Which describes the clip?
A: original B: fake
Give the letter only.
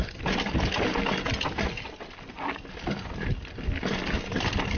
A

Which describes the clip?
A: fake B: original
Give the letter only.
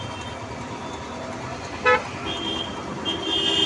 B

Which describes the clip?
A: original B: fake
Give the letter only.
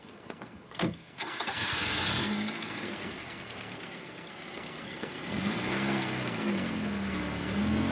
B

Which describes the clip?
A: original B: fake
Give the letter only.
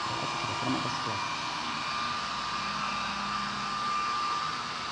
A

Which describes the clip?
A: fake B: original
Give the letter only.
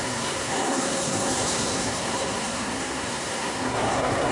A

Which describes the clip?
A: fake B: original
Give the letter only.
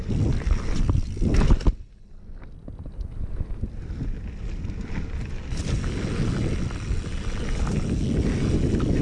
B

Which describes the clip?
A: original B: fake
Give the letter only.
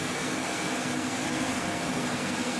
B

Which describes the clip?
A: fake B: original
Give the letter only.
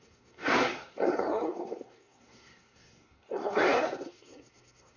A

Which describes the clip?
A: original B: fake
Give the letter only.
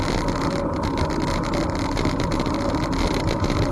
A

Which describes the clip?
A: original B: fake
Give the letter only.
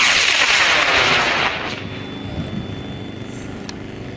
A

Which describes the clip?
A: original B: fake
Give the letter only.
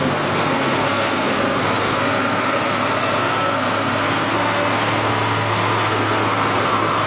B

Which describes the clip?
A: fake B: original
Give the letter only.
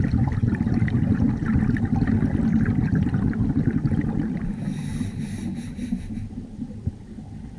B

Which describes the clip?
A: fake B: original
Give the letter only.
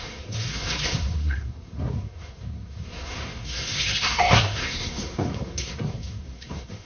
A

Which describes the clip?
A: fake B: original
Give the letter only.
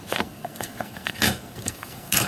A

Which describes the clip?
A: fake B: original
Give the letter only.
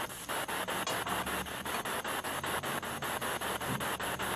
B